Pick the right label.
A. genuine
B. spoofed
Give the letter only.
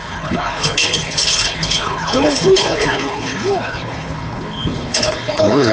B